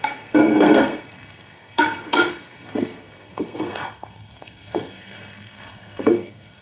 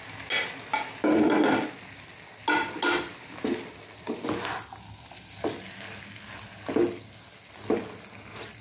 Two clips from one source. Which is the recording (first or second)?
second